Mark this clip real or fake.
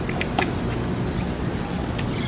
real